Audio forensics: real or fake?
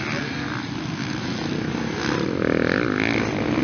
real